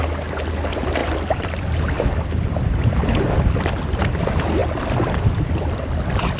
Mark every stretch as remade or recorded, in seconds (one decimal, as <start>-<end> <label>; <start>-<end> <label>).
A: 0.0-1.0 recorded; 1.0-3.2 remade; 3.2-4.6 recorded; 4.6-5.8 remade; 5.8-6.4 recorded